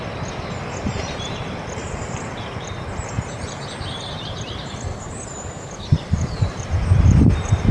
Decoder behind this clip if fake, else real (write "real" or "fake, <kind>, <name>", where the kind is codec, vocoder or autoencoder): fake, vocoder, BigVGAN v2